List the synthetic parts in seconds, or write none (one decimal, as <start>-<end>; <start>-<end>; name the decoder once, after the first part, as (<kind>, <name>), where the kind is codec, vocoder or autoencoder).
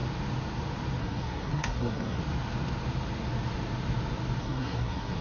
1.0-2.2 (codec, SNAC); 4.4-5.2